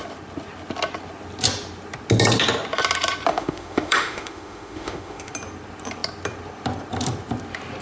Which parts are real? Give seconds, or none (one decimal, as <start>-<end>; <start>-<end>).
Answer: 0.0-3.3; 5.3-7.8